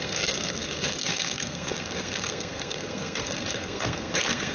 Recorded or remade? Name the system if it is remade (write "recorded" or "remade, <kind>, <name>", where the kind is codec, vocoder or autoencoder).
remade, codec, SNAC